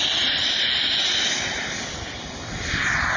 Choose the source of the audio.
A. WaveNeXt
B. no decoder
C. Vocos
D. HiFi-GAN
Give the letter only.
B